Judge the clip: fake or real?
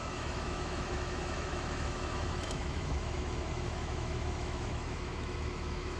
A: fake